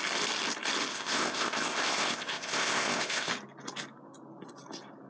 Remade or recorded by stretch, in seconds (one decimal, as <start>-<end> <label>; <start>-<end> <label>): 0.0-0.9 recorded; 0.9-3.3 remade; 3.3-5.1 recorded